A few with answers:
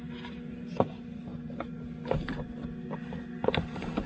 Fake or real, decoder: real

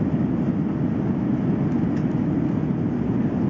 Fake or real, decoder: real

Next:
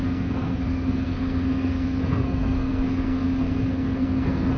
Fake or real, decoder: fake, codec, SNAC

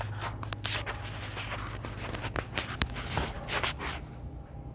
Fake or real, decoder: real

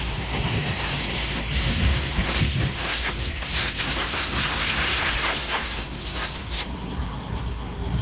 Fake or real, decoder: fake, codec, SNAC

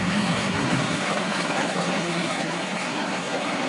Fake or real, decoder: fake, codec, SNAC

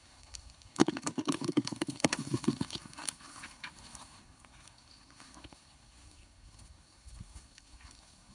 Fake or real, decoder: fake, codec, SNAC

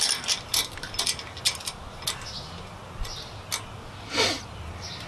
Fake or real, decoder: real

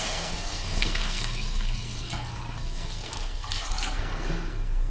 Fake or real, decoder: fake, codec, SNAC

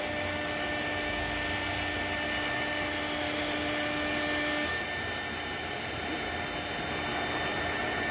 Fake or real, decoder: real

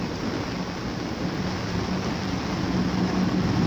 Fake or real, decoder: real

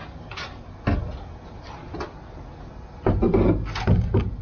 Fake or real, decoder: real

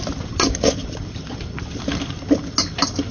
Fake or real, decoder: real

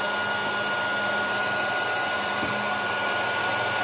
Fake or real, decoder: real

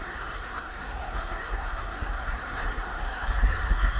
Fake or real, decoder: fake, codec, SNAC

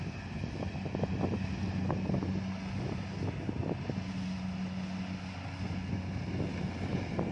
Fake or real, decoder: real